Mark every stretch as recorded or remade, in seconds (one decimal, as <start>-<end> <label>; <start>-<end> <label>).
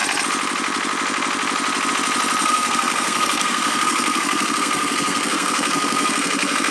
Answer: 0.0-2.4 recorded; 2.4-6.7 remade